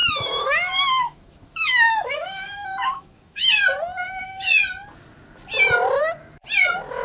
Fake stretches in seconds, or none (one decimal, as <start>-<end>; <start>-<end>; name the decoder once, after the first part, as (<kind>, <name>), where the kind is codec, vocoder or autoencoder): 0.0-3.5 (autoencoder, DAC-VAE); 4.0-4.6